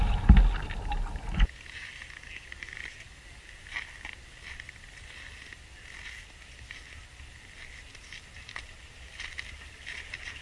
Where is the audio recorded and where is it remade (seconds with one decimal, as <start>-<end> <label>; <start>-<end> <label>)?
0.0-10.4 recorded